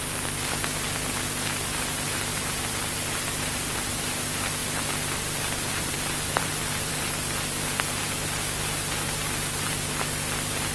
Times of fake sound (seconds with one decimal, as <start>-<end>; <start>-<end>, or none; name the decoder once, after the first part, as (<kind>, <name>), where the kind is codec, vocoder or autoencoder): 4.6-7.0 (vocoder, BigVGAN v2)